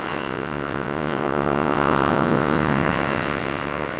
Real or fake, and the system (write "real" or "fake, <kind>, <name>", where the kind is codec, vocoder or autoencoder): fake, vocoder, WaveNeXt